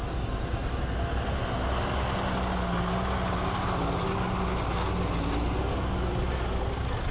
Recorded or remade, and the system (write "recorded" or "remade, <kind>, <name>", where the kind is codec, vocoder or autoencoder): recorded